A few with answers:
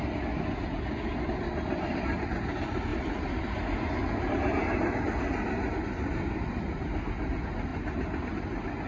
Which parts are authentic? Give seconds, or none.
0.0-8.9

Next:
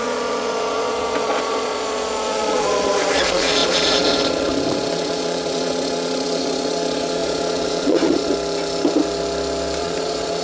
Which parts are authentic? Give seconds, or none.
8.3-9.8

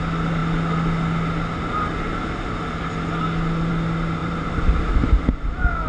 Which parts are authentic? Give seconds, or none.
0.0-4.2; 4.9-5.9

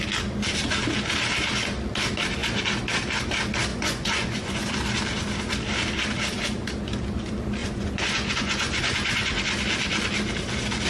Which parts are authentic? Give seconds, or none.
0.0-3.7; 4.7-7.6; 9.4-10.9

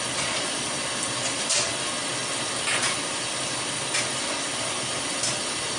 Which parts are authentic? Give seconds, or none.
0.0-5.8